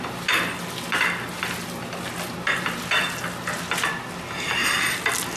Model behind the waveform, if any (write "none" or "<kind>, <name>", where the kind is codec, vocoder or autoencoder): none